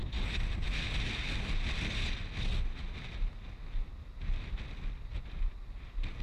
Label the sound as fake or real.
real